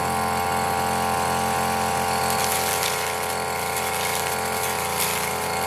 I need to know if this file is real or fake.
real